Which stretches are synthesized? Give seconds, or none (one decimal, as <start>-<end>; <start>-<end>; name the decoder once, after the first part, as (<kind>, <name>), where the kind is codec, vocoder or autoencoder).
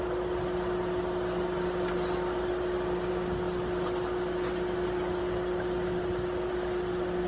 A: none